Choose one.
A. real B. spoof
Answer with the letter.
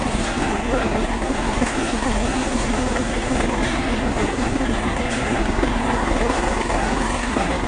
B